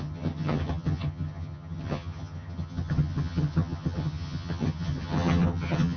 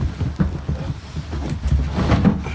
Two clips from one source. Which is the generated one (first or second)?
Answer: first